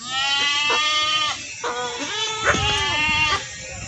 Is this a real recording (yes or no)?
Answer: yes